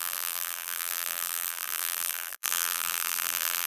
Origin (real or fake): fake